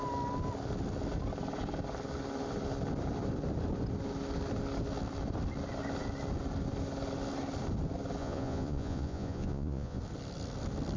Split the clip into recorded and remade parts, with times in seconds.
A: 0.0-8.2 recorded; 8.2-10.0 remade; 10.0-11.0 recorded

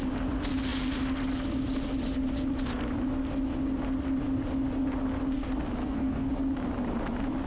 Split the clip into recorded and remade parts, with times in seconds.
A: 0.0-5.8 recorded; 5.8-6.3 remade; 6.3-7.5 recorded

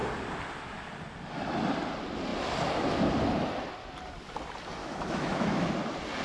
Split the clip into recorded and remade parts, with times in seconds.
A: 0.0-4.8 recorded; 4.8-5.7 remade; 5.7-6.2 recorded

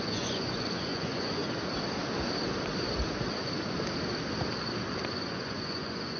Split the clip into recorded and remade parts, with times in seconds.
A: 0.0-1.4 remade; 1.4-5.1 recorded; 5.1-6.2 remade

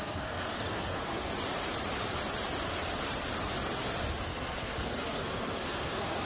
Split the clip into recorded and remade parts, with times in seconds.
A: 0.0-1.3 remade; 1.3-4.2 recorded; 4.2-6.3 remade